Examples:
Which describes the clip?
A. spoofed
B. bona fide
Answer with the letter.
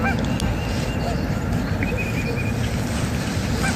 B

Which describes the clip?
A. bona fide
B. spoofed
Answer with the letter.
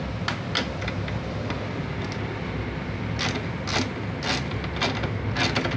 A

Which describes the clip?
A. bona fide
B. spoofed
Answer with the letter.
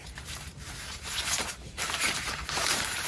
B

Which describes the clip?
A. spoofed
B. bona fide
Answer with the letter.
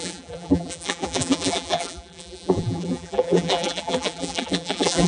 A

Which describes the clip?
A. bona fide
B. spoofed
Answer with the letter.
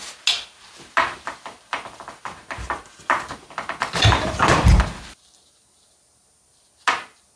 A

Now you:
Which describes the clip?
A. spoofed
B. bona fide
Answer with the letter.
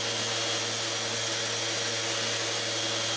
B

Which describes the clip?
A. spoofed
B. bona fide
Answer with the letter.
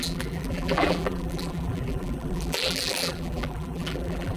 A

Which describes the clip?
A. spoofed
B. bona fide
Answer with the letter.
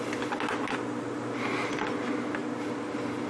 B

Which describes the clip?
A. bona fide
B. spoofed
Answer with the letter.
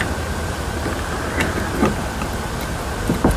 A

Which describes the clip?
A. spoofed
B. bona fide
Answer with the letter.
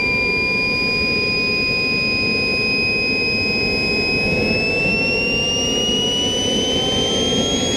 B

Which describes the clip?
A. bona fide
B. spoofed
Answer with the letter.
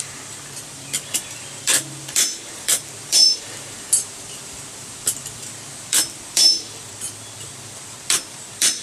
B